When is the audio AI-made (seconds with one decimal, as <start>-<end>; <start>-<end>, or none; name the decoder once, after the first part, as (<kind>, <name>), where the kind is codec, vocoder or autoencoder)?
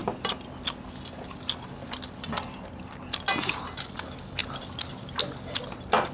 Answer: none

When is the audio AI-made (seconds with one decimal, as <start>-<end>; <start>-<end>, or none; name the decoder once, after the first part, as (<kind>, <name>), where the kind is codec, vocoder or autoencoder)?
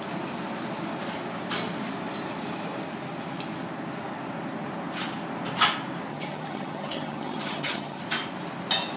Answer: 6.1-8.0 (vocoder, HiFi-GAN)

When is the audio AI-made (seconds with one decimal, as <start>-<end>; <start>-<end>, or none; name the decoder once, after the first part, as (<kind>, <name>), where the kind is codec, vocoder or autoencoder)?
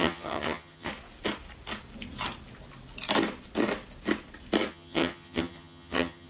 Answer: 0.0-0.9 (vocoder, HiFi-GAN); 4.7-6.3